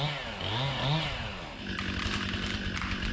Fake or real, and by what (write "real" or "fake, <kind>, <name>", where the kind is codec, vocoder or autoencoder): real